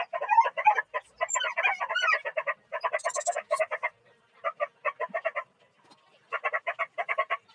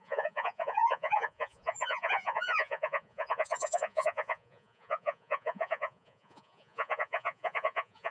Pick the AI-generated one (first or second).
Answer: second